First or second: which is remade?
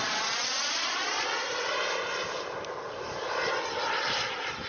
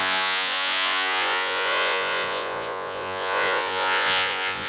second